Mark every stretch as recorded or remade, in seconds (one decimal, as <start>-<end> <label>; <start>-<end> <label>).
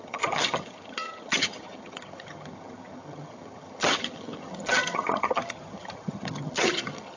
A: 0.0-7.2 remade